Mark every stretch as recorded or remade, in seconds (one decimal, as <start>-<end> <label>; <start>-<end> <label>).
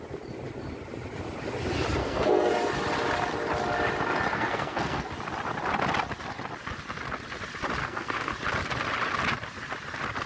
0.0-2.0 recorded; 2.0-2.5 remade; 2.5-4.3 recorded; 4.3-5.1 remade; 5.1-7.8 recorded; 7.8-8.3 remade; 8.3-10.3 recorded